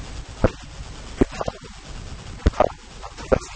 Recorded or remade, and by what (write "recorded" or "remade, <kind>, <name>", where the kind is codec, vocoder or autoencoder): recorded